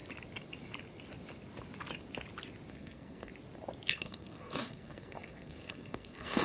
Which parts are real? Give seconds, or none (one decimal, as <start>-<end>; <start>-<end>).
0.0-2.7; 3.3-3.9